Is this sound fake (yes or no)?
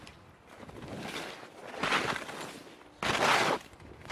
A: no